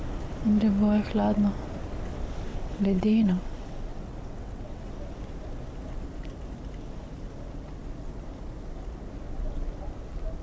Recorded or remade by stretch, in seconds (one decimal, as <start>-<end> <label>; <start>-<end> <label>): 0.0-2.5 recorded; 2.5-4.9 remade; 4.9-10.4 recorded